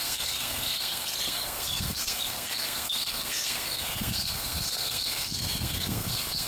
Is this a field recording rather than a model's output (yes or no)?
no